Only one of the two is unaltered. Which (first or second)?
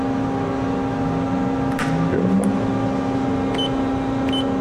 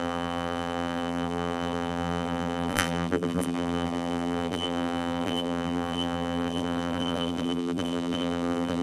first